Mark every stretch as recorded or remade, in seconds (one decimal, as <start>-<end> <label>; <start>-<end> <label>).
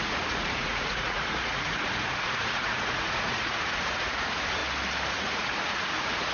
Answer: 0.0-4.6 remade; 4.6-5.1 recorded; 5.1-6.3 remade